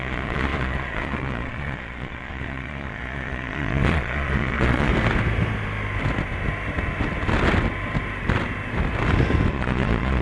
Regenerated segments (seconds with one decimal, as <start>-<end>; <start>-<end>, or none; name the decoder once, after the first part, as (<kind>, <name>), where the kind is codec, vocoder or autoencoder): 0.0-4.9 (vocoder, Vocos); 9.5-10.2